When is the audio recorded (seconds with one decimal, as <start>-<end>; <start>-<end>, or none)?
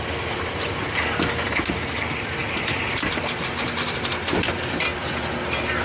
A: 0.0-5.8